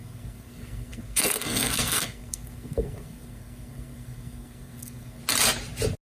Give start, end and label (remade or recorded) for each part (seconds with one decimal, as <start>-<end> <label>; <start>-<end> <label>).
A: 0.0-5.2 remade; 5.2-6.2 recorded